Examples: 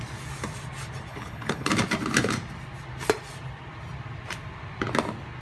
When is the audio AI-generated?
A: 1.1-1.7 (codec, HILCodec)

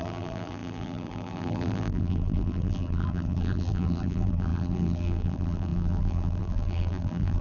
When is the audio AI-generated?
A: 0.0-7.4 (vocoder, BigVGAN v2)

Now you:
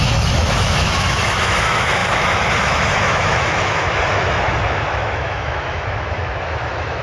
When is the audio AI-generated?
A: 0.0-7.0 (autoencoder, DAC-VAE)

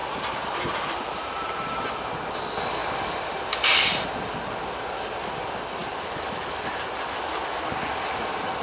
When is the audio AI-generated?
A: 0.0-1.9 (vocoder, BigVGAN v2)

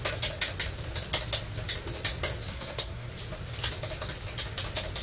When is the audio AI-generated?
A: 2.5-3.1 (codec, SNAC)